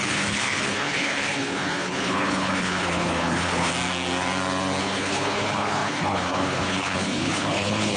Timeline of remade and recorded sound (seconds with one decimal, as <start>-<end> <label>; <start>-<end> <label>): 0.0-3.7 remade; 3.7-4.8 recorded; 4.8-8.0 remade